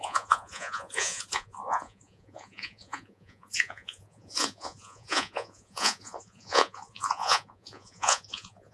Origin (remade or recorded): remade